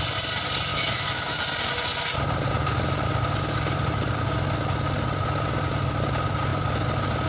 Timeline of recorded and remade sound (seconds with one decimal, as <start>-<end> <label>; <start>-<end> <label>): 0.0-0.7 recorded; 0.7-1.4 remade; 1.4-7.3 recorded